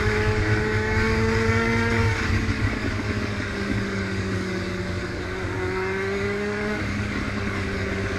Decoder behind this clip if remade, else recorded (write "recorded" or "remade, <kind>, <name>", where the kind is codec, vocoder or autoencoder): remade, codec, DAC